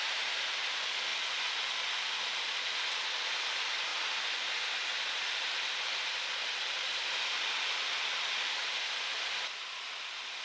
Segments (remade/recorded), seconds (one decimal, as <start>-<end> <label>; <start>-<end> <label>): 0.0-10.4 recorded

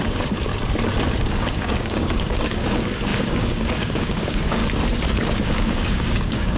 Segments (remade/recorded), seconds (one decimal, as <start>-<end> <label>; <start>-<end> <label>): 0.0-0.5 remade; 0.5-1.2 recorded; 1.2-4.6 remade; 4.6-5.3 recorded; 5.3-6.6 remade

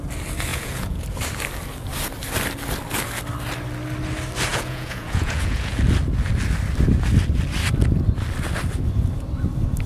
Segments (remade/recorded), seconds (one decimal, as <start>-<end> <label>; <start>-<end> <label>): 0.0-0.5 recorded; 0.5-1.0 remade; 1.0-4.5 recorded; 4.5-5.8 remade; 5.8-9.9 recorded

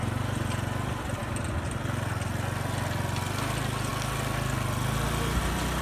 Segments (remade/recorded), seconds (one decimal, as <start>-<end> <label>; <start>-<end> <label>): 0.0-5.8 recorded

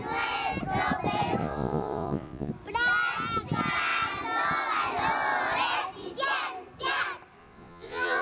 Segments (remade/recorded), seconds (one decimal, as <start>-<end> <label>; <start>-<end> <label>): 0.0-1.4 recorded; 1.4-2.5 remade; 2.5-7.4 recorded; 7.4-8.2 remade

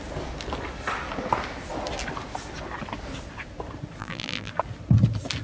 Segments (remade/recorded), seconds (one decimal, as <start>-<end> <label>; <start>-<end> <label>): 0.0-4.0 recorded; 4.0-4.5 remade; 4.5-5.4 recorded

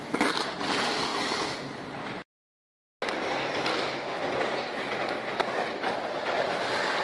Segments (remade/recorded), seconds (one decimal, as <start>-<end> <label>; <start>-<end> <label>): 0.0-3.7 recorded; 3.7-4.2 remade; 4.2-7.0 recorded

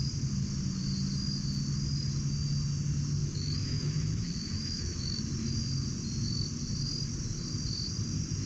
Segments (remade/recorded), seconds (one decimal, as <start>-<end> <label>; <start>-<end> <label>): 0.0-3.2 recorded; 3.2-5.2 remade; 5.2-8.5 recorded